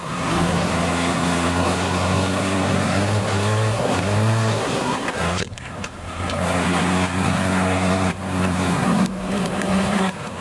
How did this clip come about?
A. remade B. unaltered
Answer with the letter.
A